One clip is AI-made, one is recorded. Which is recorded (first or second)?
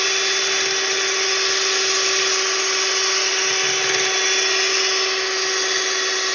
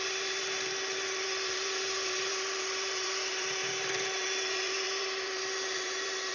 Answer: first